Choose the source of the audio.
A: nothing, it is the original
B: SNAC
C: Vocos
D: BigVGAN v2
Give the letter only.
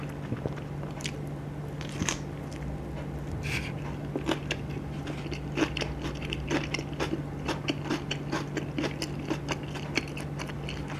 D